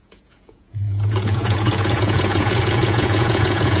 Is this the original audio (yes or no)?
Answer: no